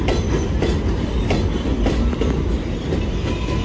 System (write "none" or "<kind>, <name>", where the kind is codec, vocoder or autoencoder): none